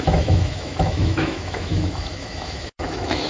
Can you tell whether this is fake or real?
fake